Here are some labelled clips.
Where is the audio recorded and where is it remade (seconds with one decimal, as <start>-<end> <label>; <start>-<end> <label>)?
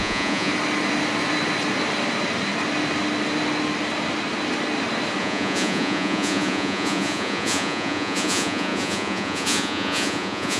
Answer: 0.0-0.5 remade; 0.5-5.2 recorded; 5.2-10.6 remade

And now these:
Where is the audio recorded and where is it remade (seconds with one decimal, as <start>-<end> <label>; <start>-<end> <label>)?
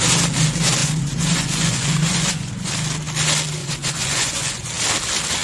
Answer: 0.0-0.8 recorded; 0.8-2.7 remade; 2.7-3.6 recorded; 3.6-4.7 remade; 4.7-5.4 recorded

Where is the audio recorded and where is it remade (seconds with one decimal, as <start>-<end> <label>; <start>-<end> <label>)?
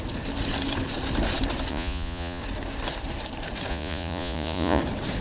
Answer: 0.0-1.7 recorded; 1.7-2.4 remade; 2.4-3.7 recorded; 3.7-4.8 remade; 4.8-5.2 recorded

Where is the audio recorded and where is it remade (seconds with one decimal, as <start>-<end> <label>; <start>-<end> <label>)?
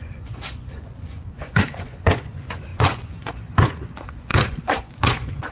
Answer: 0.0-5.5 remade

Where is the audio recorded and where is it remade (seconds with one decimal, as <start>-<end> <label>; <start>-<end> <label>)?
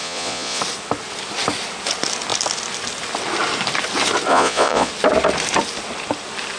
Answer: 0.0-0.6 remade; 0.6-4.3 recorded; 4.3-4.9 remade; 4.9-6.6 recorded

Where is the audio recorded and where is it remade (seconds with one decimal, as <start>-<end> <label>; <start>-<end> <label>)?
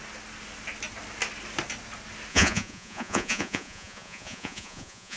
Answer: 0.0-2.3 recorded; 2.3-5.2 remade